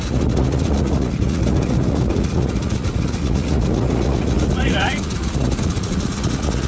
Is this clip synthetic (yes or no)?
yes